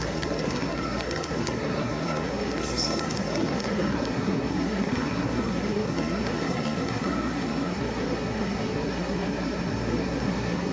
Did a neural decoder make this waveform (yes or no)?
yes